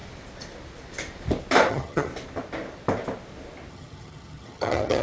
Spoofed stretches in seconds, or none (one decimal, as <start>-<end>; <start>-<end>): 1.7-2.1; 3.7-5.0